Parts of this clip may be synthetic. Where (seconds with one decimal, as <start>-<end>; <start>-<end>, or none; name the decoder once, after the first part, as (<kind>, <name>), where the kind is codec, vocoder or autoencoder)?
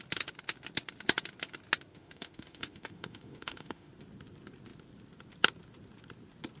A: 1.9-3.9 (autoencoder, DAC-VAE)